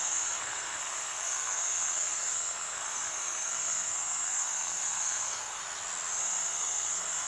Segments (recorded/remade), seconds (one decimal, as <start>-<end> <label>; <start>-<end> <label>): 0.0-5.6 remade; 5.6-6.2 recorded; 6.2-7.3 remade